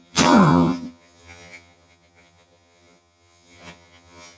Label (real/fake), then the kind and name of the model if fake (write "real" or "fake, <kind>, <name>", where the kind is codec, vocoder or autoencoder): fake, vocoder, HiFi-GAN